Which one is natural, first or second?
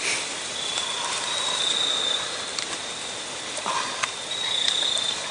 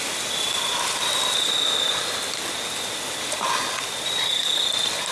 second